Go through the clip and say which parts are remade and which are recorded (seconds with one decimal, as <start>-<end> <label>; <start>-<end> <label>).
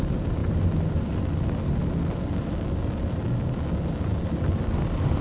0.0-5.2 recorded